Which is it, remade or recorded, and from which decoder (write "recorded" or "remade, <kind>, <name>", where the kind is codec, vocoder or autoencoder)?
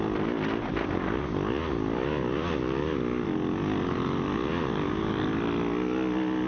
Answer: recorded